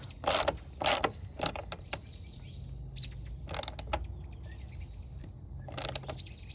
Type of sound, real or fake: real